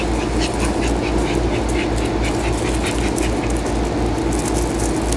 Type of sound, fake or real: real